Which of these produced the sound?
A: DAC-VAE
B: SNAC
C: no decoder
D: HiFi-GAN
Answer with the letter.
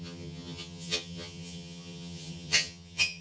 D